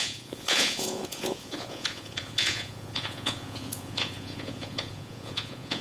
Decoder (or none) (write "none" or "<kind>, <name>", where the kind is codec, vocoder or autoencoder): vocoder, Vocos